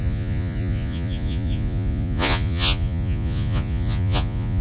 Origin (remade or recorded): remade